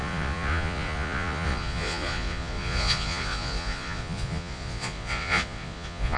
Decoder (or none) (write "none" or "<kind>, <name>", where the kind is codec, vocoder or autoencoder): vocoder, Vocos